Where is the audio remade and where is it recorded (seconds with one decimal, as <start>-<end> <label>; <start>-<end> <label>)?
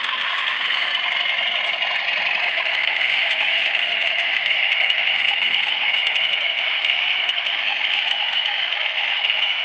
0.0-0.9 remade; 0.9-2.5 recorded; 2.5-9.6 remade